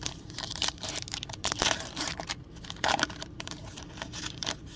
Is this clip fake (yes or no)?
yes